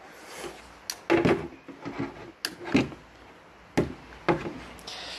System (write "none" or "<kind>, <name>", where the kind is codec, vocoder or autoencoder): none